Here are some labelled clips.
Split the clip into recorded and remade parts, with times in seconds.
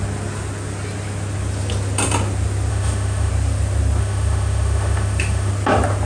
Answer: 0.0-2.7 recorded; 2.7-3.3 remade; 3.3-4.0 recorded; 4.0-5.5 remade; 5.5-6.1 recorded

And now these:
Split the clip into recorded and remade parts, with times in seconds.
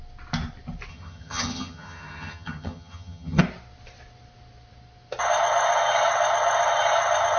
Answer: 0.0-0.9 recorded; 0.9-3.4 remade; 3.4-7.4 recorded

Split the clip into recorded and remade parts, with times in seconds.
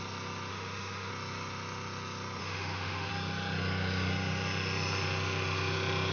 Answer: 0.0-0.5 recorded; 0.5-1.1 remade; 1.1-2.4 recorded; 2.4-3.1 remade; 3.1-6.1 recorded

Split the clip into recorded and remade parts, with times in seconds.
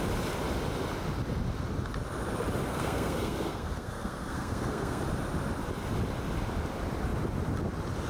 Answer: 0.0-2.7 recorded; 2.7-5.0 remade; 5.0-8.1 recorded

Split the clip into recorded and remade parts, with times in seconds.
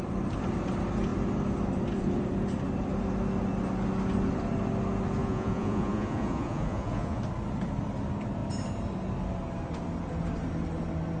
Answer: 0.0-5.2 recorded; 5.2-7.2 remade; 7.2-11.2 recorded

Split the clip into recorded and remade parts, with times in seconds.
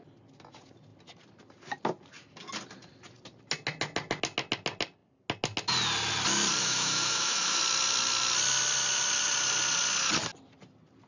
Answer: 0.0-6.6 recorded; 6.6-7.6 remade; 7.6-11.1 recorded